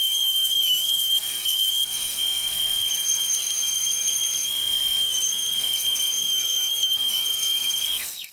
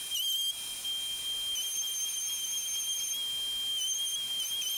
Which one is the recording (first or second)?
second